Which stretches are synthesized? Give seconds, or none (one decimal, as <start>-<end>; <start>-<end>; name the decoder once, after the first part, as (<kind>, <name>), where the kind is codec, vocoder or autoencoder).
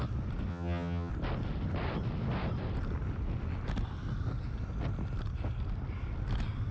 0.5-1.1 (vocoder, HiFi-GAN)